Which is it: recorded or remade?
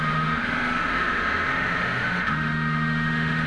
remade